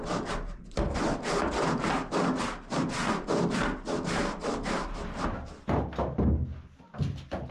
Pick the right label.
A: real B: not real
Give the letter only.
A